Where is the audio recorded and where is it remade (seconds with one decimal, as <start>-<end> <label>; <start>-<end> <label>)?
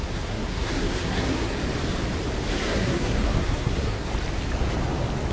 0.0-1.6 remade; 1.6-2.5 recorded; 2.5-4.1 remade; 4.1-5.3 recorded